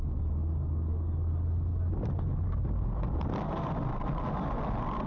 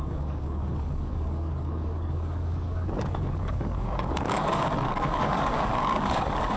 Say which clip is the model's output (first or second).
second